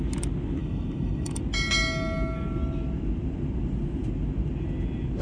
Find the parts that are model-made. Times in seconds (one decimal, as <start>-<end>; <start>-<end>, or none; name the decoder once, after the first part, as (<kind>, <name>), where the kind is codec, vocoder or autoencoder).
0.6-1.4 (autoencoder, DAC-VAE)